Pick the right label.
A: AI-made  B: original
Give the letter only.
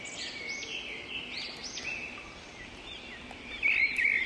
B